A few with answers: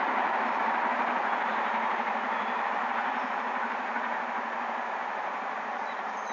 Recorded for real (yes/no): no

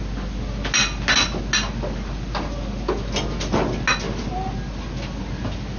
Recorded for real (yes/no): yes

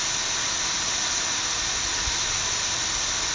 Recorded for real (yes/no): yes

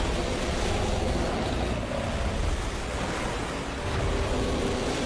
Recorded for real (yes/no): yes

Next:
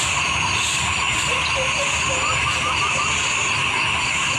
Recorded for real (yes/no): yes